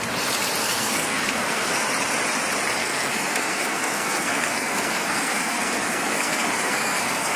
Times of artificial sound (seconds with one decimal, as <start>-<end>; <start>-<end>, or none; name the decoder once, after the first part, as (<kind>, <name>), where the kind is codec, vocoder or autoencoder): 0.6-1.8 (codec, SNAC); 2.8-7.4